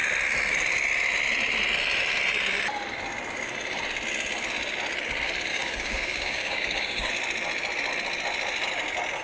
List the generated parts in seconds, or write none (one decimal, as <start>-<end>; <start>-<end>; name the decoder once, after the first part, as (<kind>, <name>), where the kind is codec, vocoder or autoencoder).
5.5-7.1 (codec, DAC)